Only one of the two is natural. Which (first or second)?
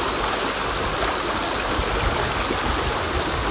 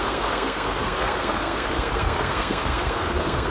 first